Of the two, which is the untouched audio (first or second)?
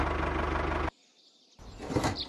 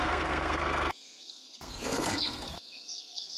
first